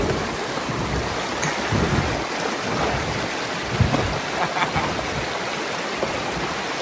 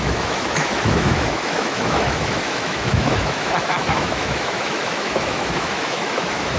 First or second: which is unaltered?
first